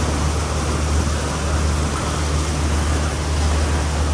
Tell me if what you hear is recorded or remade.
recorded